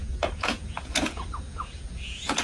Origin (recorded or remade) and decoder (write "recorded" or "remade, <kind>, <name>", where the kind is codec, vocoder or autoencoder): remade, vocoder, Vocos